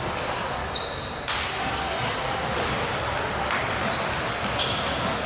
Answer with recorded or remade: recorded